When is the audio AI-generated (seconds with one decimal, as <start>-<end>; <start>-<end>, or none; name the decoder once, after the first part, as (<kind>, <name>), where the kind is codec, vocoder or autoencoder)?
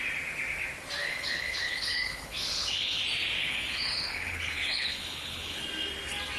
1.0-3.0 (codec, HILCodec); 3.4-5.6